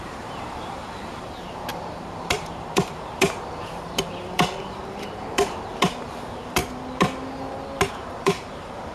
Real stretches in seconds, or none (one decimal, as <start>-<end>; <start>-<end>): 6.6-7.9